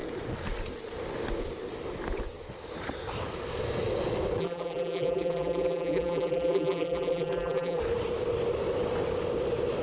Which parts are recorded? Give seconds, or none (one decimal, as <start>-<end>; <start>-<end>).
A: 0.0-4.4; 7.8-9.8